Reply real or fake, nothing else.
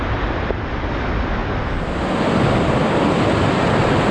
real